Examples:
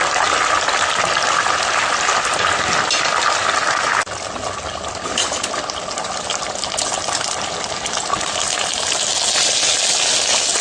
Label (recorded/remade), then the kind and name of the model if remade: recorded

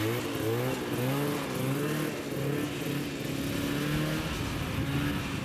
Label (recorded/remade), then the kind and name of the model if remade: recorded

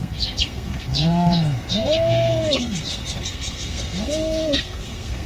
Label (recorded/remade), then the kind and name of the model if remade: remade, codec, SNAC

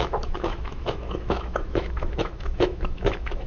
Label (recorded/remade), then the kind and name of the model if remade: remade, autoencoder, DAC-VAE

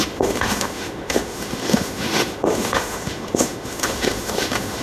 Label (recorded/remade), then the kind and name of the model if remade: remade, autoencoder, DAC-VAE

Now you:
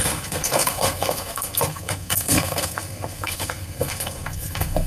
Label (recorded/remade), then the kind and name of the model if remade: remade, codec, SNAC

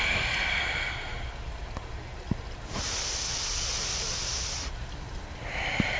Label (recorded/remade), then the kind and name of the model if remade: recorded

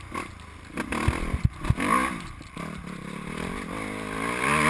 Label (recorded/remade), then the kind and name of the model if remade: recorded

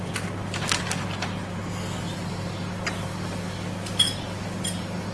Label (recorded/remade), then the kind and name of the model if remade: recorded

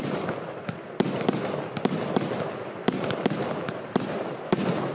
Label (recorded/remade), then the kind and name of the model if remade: recorded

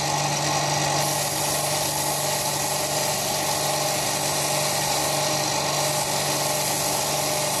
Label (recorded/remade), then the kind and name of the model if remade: recorded